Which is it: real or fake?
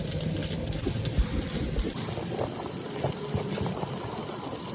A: real